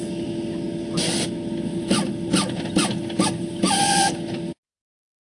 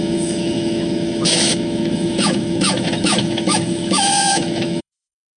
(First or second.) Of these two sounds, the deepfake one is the second